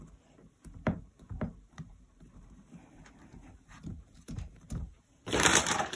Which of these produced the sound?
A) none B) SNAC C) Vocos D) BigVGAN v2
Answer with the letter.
D